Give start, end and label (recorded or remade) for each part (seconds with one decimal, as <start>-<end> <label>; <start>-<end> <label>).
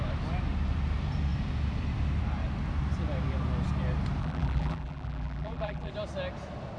0.0-4.2 recorded; 4.2-5.9 remade; 5.9-6.8 recorded